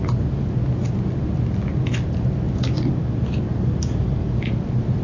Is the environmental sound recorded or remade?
recorded